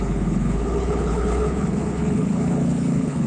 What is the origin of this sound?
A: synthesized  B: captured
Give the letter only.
A